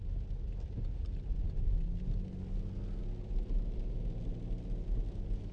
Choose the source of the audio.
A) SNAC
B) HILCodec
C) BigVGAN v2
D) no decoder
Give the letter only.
D